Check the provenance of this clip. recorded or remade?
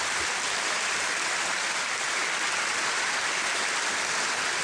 recorded